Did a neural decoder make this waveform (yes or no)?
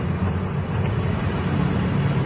no